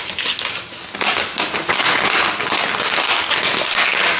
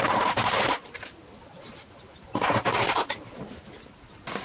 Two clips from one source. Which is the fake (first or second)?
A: second